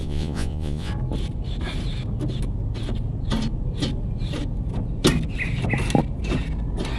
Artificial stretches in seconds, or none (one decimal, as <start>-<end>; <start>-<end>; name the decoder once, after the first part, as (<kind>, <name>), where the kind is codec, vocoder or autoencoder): 0.0-0.9 (vocoder, Vocos)